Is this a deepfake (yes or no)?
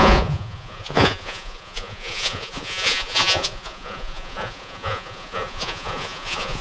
yes